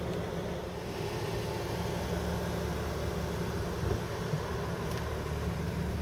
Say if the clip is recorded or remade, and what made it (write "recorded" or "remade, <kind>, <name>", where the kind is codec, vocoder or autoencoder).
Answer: recorded